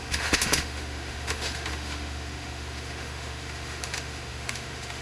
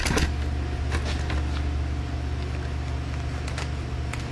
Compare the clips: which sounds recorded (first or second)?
second